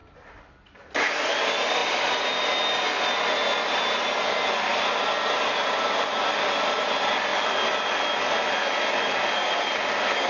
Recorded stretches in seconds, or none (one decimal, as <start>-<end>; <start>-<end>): 1.3-1.8; 2.5-10.3